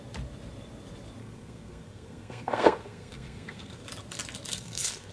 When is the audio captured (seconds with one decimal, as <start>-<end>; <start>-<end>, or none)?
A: 0.0-1.2; 3.8-4.5